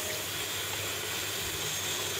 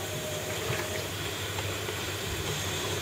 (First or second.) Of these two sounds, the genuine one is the first